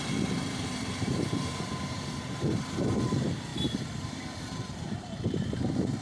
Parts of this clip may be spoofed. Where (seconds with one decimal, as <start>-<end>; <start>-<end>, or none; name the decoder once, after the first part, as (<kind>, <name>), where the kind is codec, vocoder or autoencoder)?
0.0-6.0 (vocoder, BigVGAN v2)